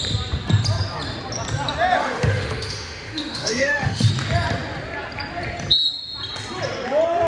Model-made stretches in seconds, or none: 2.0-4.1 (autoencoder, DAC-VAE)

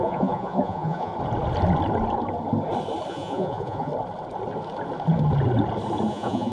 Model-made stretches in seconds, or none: 0.0-1.1 (vocoder, Vocos); 3.1-3.9; 6.1-6.5

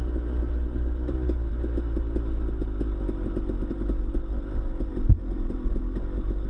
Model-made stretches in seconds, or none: none

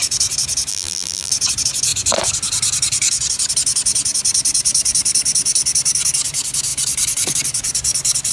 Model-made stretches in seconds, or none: 0.7-1.3 (vocoder, BigVGAN v2)